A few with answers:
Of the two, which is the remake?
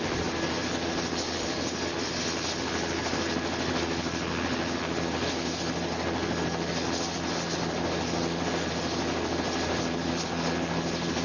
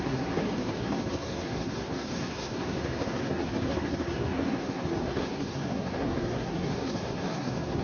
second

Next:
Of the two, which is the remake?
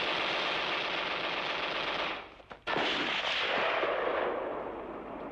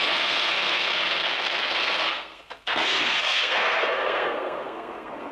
second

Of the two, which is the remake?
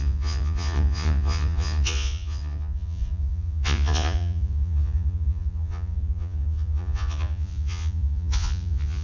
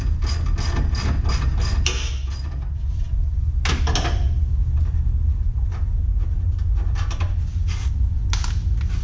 first